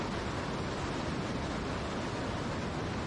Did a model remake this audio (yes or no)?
no